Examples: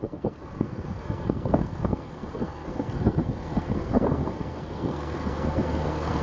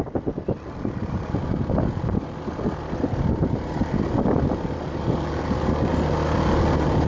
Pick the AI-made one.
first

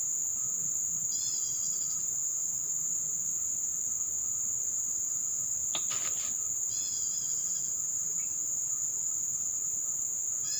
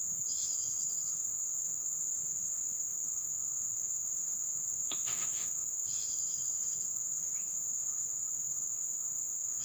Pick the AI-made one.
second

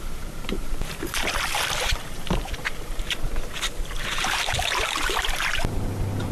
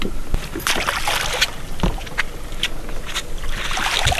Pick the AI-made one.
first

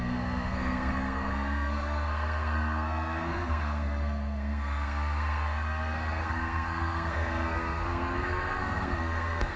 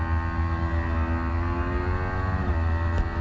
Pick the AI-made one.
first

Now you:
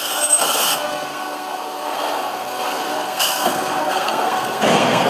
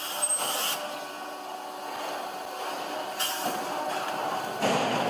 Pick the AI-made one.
first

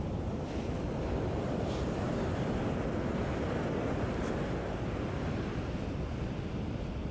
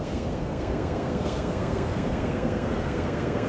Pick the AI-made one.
second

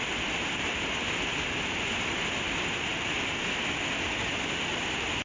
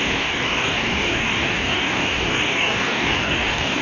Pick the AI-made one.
second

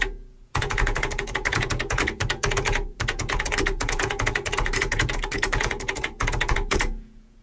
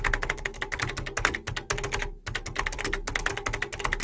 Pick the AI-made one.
first